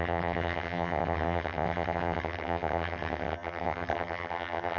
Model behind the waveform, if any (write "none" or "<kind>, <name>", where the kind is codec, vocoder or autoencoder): vocoder, HiFi-GAN